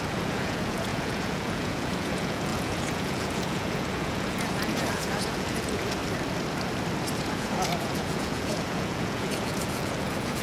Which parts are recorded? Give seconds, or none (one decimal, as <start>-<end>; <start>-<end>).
6.0-7.2